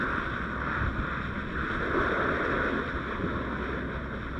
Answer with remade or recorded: recorded